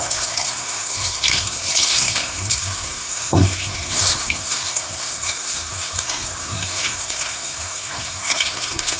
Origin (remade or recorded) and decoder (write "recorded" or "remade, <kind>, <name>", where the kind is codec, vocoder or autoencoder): remade, codec, SNAC